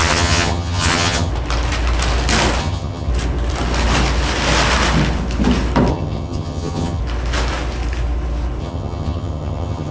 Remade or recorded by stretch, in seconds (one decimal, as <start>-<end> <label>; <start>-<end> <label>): 0.0-1.3 remade; 1.3-2.6 recorded; 2.6-3.1 remade; 3.1-5.9 recorded; 5.9-7.0 remade; 7.0-8.6 recorded; 8.6-9.9 remade